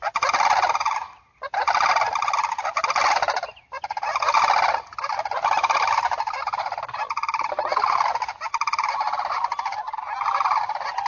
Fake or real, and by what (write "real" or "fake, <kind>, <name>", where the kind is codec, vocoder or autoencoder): real